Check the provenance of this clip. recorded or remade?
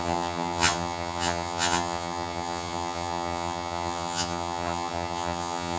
remade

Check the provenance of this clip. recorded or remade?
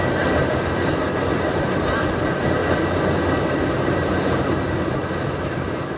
recorded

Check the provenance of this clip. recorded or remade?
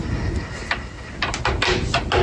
recorded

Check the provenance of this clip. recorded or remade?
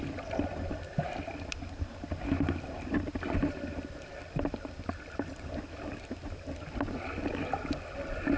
recorded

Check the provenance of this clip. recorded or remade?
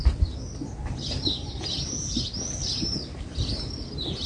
recorded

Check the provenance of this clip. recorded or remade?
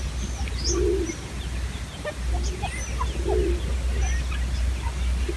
recorded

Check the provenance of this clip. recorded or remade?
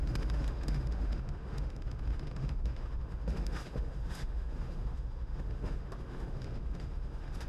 remade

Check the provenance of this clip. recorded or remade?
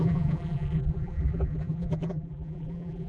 remade